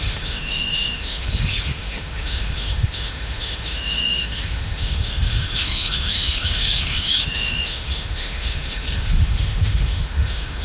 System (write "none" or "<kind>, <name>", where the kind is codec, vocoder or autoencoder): autoencoder, DAC-VAE